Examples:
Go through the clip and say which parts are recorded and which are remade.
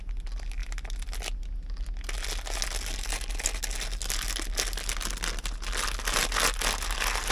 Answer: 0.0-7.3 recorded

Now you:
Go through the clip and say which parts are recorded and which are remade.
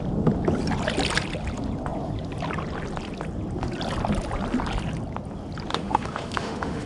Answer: 0.0-5.7 recorded; 5.7-6.9 remade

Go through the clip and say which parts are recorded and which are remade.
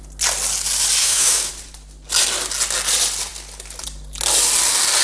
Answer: 0.0-1.0 recorded; 1.0-1.5 remade; 1.5-5.0 recorded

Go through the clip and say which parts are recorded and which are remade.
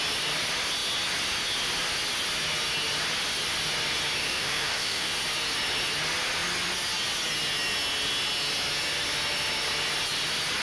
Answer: 0.0-4.2 recorded; 4.2-5.1 remade; 5.1-10.6 recorded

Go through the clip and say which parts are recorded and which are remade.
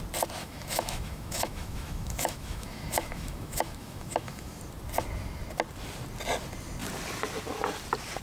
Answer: 0.0-0.4 recorded; 0.4-4.6 remade; 4.6-8.2 recorded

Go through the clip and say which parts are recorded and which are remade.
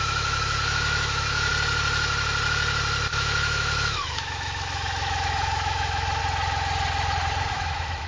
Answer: 0.0-1.5 remade; 1.5-3.1 recorded; 3.1-6.2 remade; 6.2-7.5 recorded; 7.5-8.1 remade